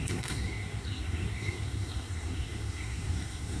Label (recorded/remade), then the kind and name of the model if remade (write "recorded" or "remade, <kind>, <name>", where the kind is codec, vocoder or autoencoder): remade, codec, SNAC